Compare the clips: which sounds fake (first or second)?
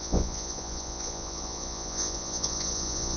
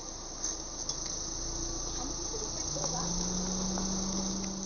first